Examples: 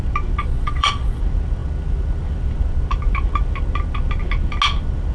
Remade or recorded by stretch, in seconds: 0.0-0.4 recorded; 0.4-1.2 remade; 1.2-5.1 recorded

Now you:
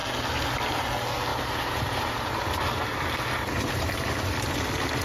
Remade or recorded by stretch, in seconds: 0.0-1.3 recorded; 1.3-4.3 remade; 4.3-5.0 recorded

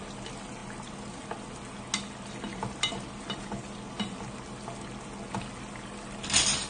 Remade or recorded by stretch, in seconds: 0.0-6.7 recorded

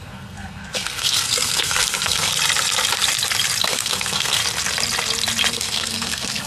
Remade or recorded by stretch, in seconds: 0.0-2.3 remade; 2.3-3.6 recorded; 3.6-4.4 remade; 4.4-5.5 recorded; 5.5-6.5 remade

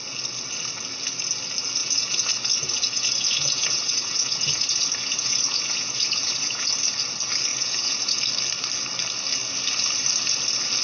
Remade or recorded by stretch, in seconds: 0.0-1.8 recorded; 1.8-6.7 remade; 6.7-7.5 recorded; 7.5-8.2 remade; 8.2-10.8 recorded

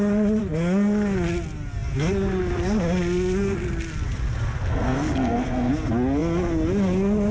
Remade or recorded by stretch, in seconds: 0.0-4.7 recorded; 4.7-5.7 remade; 5.7-7.3 recorded

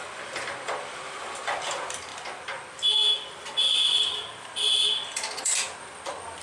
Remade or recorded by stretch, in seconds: 0.0-6.4 remade

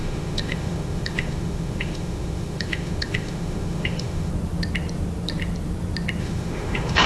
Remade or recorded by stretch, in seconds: 0.0-4.3 remade; 4.3-6.2 recorded; 6.2-7.1 remade